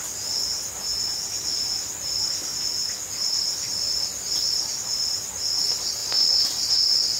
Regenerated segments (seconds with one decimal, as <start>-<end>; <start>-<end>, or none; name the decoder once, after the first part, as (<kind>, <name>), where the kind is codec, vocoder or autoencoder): none